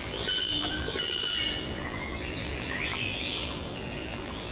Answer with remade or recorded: remade